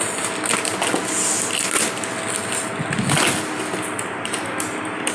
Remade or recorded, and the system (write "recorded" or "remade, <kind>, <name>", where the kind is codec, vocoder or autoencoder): recorded